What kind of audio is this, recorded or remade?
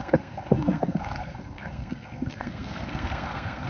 remade